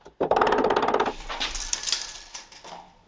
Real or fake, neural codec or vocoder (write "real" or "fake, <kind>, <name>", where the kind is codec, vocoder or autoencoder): real